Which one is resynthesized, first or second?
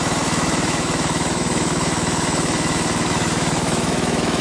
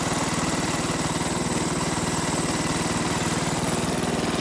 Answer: first